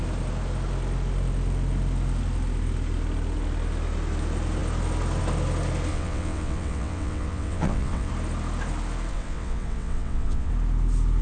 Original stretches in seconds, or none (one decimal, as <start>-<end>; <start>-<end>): 0.0-5.9; 8.1-9.1; 10.5-11.2